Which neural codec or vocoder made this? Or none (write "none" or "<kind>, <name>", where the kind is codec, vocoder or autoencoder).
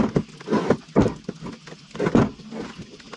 none